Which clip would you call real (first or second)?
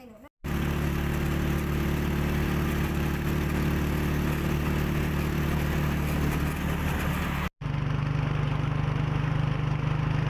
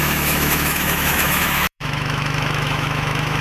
first